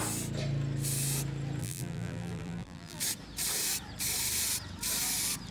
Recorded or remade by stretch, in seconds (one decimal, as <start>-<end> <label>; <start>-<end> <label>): 0.0-1.6 recorded; 1.6-3.0 remade; 3.0-5.5 recorded